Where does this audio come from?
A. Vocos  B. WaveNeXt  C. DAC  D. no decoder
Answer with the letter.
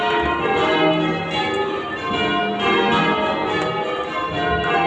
D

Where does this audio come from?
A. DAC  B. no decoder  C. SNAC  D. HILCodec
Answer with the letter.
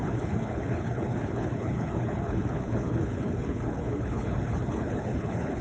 D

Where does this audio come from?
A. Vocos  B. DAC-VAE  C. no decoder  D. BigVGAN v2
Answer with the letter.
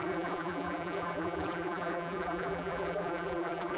D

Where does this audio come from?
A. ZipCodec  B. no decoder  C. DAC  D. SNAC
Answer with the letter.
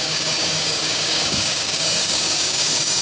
C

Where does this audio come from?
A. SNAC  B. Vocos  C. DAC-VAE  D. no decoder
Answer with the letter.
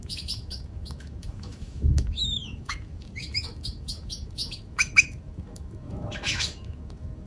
C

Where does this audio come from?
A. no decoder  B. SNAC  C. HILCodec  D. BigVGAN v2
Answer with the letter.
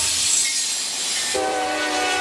D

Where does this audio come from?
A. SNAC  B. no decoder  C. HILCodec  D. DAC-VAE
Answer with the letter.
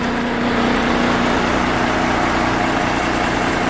B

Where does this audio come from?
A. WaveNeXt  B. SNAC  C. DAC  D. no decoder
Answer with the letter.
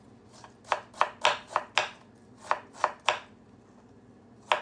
D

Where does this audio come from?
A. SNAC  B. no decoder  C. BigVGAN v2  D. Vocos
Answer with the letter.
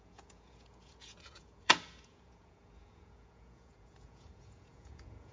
D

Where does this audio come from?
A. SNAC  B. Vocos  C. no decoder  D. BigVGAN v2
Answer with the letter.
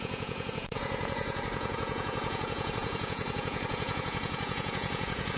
B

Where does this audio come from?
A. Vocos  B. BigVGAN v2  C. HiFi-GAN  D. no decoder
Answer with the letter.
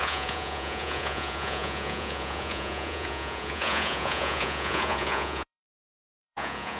A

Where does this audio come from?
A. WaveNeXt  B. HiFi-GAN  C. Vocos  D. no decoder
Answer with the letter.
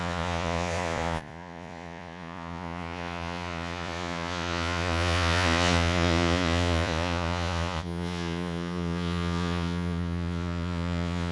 C